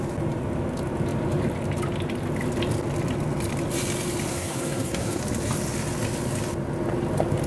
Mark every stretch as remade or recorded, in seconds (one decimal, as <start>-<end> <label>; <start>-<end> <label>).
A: 0.0-4.3 recorded; 4.3-5.2 remade; 5.2-7.5 recorded